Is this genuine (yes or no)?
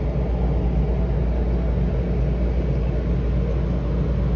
yes